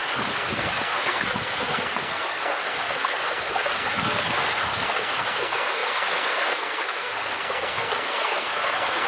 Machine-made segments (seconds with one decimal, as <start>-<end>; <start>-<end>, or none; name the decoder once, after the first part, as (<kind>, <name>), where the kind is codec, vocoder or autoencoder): 0.0-9.1 (codec, SNAC)